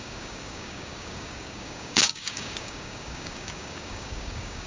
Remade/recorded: remade